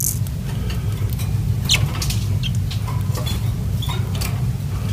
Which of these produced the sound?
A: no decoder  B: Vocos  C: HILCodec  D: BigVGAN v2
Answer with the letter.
A